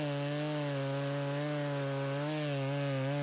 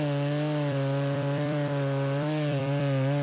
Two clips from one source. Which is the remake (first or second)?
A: second